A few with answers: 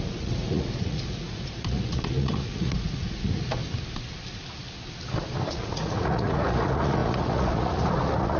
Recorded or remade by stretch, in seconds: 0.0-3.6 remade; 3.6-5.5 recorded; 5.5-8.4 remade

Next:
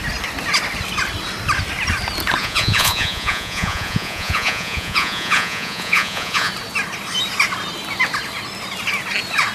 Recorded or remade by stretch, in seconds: 0.0-2.4 recorded; 2.4-6.5 remade; 6.5-9.5 recorded

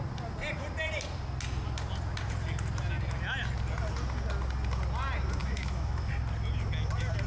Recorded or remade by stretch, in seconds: 0.0-5.4 recorded; 5.4-6.1 remade; 6.1-7.3 recorded

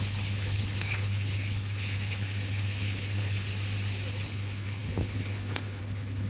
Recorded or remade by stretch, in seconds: 0.0-3.5 remade; 3.5-4.1 recorded; 4.1-6.3 remade

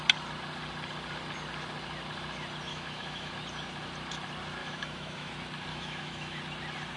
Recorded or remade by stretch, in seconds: 0.0-2.7 recorded; 2.7-3.3 remade; 3.3-4.6 recorded; 4.6-5.3 remade; 5.3-5.7 recorded; 5.7-6.4 remade; 6.4-7.0 recorded

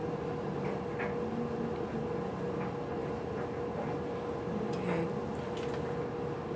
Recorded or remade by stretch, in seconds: 0.0-6.6 recorded

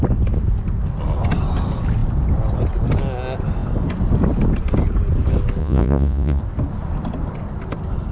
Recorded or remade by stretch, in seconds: 0.0-5.6 recorded; 5.6-6.4 remade; 6.4-8.1 recorded

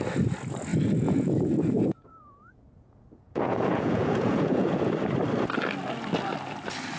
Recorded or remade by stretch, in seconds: 0.0-0.7 recorded; 0.7-4.9 remade; 4.9-7.0 recorded